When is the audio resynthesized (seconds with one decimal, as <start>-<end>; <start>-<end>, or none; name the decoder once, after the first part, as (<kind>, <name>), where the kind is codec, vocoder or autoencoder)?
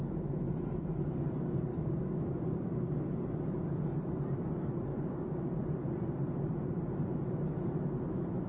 1.7-2.7 (codec, DAC); 4.9-5.4